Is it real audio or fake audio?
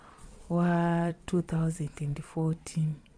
fake